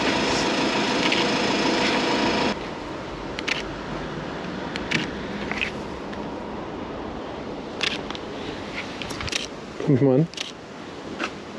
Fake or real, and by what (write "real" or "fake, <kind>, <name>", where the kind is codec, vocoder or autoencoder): real